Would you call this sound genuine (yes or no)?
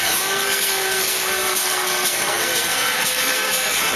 no